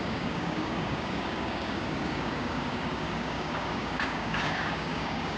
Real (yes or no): no